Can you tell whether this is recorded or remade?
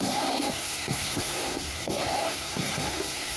remade